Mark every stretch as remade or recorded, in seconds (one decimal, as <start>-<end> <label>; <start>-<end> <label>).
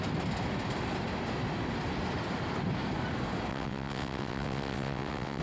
0.0-3.5 recorded; 3.5-5.4 remade